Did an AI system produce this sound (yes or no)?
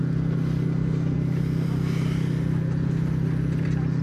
no